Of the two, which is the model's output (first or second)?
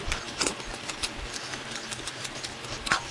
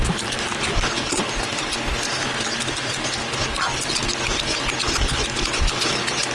first